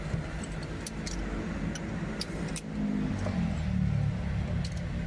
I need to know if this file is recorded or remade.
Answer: recorded